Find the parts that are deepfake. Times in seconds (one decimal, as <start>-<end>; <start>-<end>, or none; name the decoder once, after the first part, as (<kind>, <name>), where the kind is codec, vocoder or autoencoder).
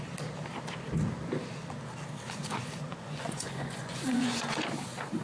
2.4-4.6 (vocoder, Vocos)